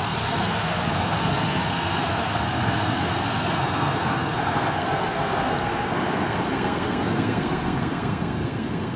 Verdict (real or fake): fake